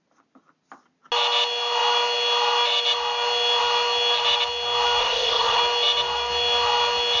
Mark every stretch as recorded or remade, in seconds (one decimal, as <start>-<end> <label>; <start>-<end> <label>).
0.0-5.0 recorded; 5.0-5.6 remade; 5.6-7.2 recorded